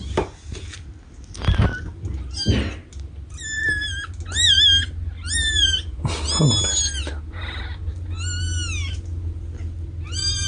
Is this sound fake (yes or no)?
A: no